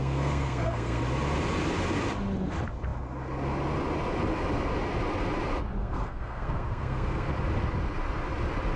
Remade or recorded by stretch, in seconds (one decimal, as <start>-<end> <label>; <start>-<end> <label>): 0.0-1.0 remade; 1.0-5.8 recorded; 5.8-7.3 remade; 7.3-8.8 recorded